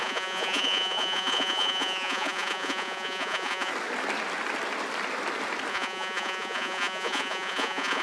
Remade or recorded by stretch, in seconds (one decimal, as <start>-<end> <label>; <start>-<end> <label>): 0.0-3.7 remade; 3.7-5.7 recorded; 5.7-8.0 remade